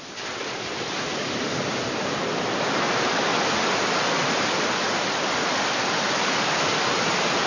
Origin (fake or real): real